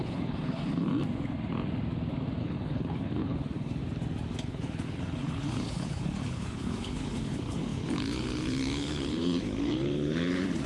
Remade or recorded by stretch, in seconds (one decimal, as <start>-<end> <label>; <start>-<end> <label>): 0.0-0.9 remade; 0.9-2.4 recorded; 2.4-3.8 remade; 3.8-4.4 recorded; 4.4-10.7 remade